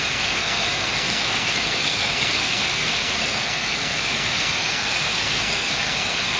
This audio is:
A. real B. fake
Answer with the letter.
B